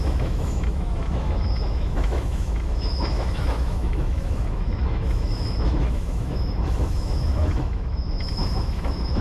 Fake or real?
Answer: fake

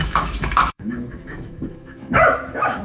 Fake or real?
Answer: fake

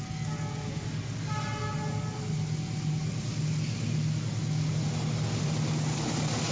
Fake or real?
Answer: real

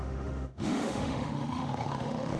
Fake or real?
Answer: fake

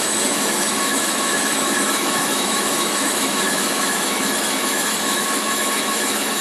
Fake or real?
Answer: fake